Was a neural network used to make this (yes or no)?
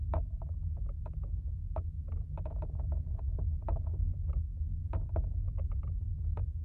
no